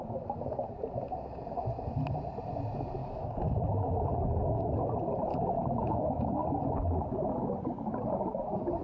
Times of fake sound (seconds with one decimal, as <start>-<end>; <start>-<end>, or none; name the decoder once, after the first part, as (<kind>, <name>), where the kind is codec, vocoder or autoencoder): 3.0-4.0 (autoencoder, DAC-VAE); 5.3-6.0